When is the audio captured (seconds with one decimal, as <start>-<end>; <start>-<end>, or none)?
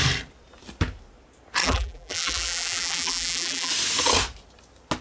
0.0-1.6; 3.7-5.0